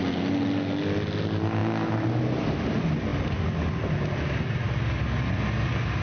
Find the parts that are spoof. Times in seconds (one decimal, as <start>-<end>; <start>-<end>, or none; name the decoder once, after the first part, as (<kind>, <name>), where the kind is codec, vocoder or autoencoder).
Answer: none